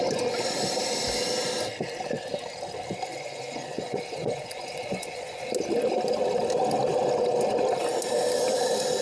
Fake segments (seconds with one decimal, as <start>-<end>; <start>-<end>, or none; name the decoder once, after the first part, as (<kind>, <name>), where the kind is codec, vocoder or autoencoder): 3.1-5.5 (vocoder, Vocos)